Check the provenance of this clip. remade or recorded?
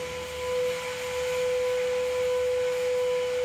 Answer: recorded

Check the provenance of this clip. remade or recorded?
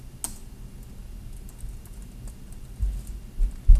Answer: recorded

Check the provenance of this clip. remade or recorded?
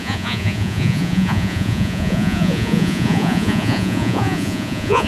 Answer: remade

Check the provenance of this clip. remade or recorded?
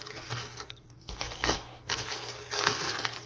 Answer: remade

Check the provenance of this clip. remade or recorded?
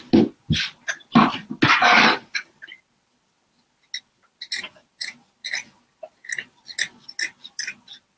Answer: recorded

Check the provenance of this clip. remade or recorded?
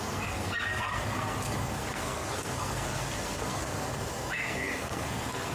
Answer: remade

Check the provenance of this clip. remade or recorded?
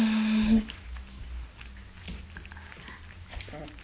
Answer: recorded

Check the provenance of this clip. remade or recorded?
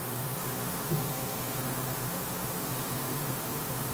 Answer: remade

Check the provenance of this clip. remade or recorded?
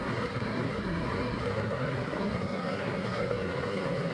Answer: remade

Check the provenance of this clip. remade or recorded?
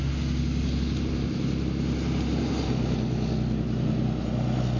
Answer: recorded